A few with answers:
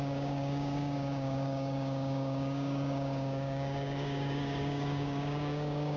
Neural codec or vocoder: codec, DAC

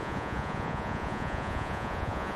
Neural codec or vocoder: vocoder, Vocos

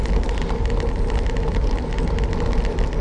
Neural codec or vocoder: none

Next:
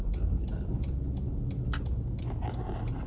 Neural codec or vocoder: none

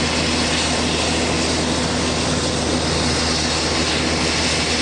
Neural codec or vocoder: none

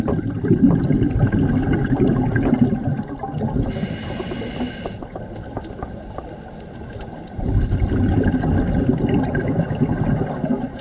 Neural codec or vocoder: none